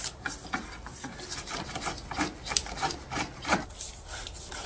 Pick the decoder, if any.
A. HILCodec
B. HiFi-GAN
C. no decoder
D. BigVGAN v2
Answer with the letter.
C